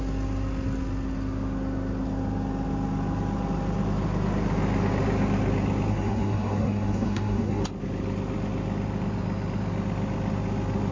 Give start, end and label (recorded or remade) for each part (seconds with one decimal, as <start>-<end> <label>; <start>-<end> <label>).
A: 0.0-5.9 recorded; 5.9-7.6 remade; 7.6-10.9 recorded